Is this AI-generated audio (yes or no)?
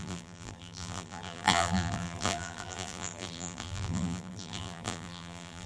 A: yes